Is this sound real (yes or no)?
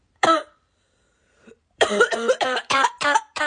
no